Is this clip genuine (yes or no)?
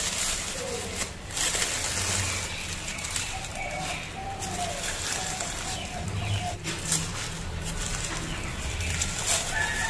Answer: yes